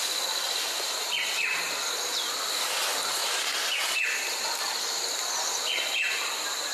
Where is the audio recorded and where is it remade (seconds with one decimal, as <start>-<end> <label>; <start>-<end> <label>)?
0.0-6.7 recorded